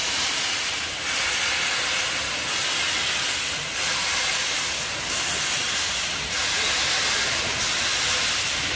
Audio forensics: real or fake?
real